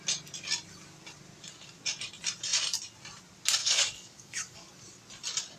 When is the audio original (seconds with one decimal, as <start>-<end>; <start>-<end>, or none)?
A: 0.0-3.6; 4.7-5.6